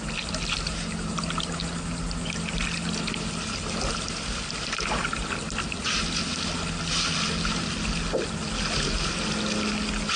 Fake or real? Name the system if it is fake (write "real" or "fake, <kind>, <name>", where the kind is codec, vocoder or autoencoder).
real